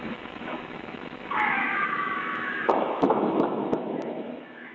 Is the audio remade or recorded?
remade